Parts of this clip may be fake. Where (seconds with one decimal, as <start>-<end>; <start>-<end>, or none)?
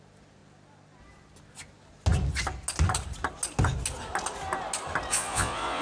5.1-5.8